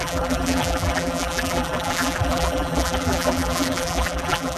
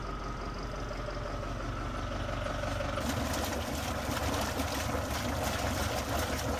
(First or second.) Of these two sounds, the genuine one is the second